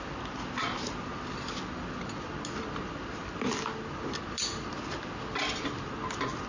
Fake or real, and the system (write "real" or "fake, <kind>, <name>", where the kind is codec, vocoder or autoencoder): real